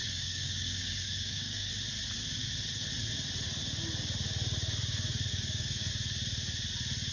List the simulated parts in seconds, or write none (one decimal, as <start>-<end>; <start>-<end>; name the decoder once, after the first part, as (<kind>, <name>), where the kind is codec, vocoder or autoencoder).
0.0-1.7 (codec, DAC); 5.3-5.9